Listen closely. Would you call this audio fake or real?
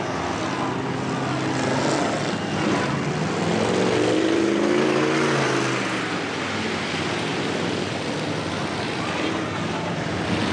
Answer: real